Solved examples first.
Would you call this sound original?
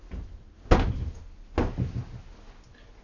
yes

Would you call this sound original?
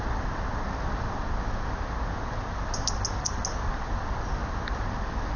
yes